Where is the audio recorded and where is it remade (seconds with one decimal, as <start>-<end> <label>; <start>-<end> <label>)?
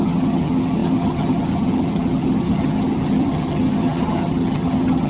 0.0-5.1 remade